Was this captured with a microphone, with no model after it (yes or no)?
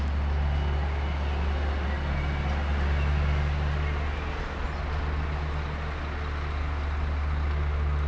yes